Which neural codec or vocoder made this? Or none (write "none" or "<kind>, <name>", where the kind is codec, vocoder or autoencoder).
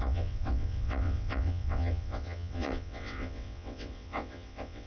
vocoder, WaveNeXt